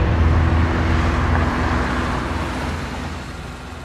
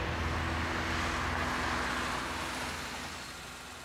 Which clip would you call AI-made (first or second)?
first